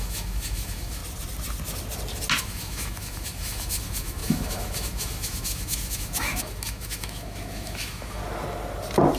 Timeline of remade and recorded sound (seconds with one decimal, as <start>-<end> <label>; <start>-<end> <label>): 0.0-1.0 remade; 1.0-2.4 recorded; 2.4-8.2 remade; 8.2-9.2 recorded